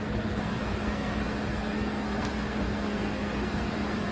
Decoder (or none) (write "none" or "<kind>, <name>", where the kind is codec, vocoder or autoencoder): codec, SNAC